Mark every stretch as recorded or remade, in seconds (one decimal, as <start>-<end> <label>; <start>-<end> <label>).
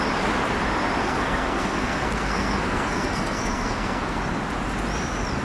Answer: 0.0-1.0 recorded; 1.0-4.2 remade; 4.2-5.4 recorded